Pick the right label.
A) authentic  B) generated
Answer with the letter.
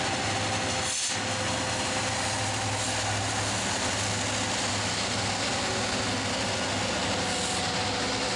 A